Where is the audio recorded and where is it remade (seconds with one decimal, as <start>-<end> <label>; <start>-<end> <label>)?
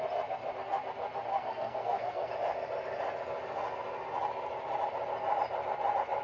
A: 0.0-1.3 recorded; 1.3-2.3 remade; 2.3-6.2 recorded